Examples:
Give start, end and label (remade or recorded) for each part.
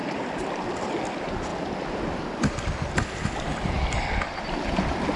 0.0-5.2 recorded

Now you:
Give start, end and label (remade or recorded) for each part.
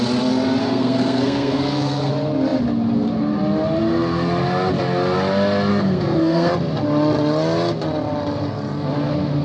0.0-0.6 recorded; 0.6-2.1 remade; 2.1-5.7 recorded; 5.7-6.5 remade; 6.5-9.4 recorded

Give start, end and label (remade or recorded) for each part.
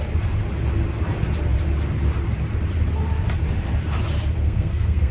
0.0-4.4 recorded; 4.4-5.1 remade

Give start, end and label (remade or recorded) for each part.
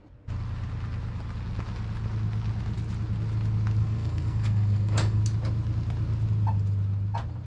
0.0-3.8 recorded; 3.8-5.2 remade; 5.2-7.5 recorded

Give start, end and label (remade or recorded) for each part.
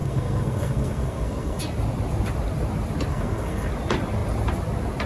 0.0-1.6 remade; 1.6-3.1 recorded; 3.1-3.7 remade; 3.7-5.1 recorded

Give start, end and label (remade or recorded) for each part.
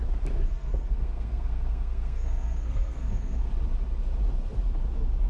0.0-0.5 recorded; 0.5-3.5 remade; 3.5-5.3 recorded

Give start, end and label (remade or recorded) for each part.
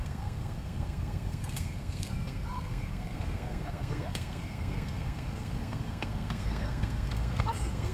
0.0-7.9 remade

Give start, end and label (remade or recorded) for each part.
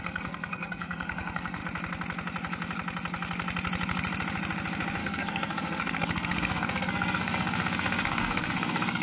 0.0-1.6 remade; 1.6-5.0 recorded; 5.0-9.0 remade